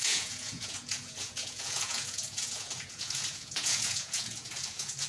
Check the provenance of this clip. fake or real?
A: fake